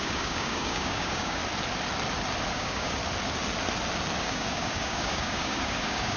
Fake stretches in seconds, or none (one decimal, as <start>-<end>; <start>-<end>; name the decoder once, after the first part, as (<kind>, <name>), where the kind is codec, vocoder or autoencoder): 0.0-1.4 (codec, DAC); 2.5-3.0; 4.2-6.2